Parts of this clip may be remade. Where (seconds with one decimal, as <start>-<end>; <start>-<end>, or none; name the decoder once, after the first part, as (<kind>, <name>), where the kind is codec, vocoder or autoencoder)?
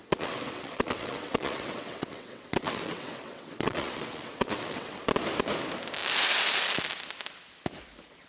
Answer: 0.0-5.0 (vocoder, WaveNeXt)